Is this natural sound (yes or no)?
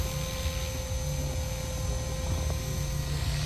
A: yes